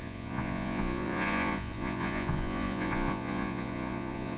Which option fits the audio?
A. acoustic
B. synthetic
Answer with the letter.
B